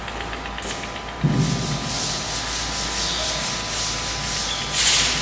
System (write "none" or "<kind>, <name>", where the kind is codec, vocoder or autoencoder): none